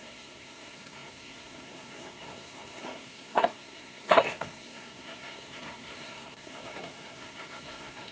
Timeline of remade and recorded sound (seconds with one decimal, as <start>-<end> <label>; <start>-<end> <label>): 0.0-8.1 remade